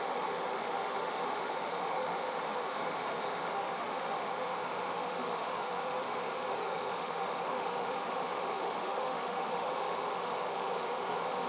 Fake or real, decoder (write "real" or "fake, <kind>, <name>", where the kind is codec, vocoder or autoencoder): fake, autoencoder, DAC-VAE